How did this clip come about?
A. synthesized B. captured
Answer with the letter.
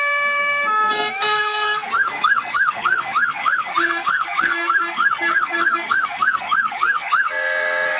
A